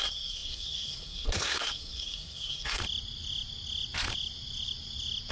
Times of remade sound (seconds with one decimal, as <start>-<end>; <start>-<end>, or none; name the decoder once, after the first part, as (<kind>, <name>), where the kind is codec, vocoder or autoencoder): 0.0-2.8 (codec, SNAC)